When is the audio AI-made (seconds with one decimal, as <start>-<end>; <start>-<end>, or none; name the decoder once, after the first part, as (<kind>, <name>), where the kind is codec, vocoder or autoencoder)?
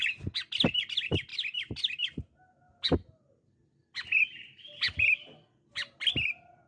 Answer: none